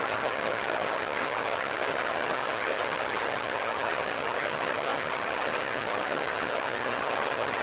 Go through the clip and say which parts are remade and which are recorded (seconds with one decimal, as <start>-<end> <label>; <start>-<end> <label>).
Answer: 0.0-7.6 remade